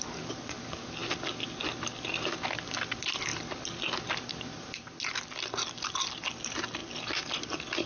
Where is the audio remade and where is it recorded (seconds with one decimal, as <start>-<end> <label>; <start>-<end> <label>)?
0.0-3.3 recorded; 3.3-4.3 remade; 4.3-7.9 recorded